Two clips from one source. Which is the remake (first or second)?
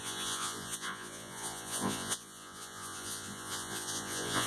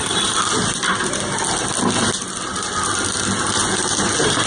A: first